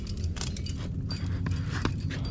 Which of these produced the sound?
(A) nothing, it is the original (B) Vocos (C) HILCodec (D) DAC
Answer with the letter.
A